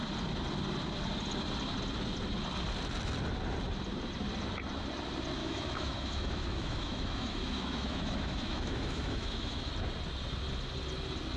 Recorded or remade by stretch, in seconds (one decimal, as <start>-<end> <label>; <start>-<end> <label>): 0.0-5.4 recorded; 5.4-9.7 remade; 9.7-11.4 recorded